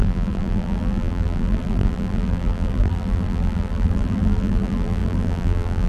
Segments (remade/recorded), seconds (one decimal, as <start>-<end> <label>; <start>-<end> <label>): 0.0-5.9 remade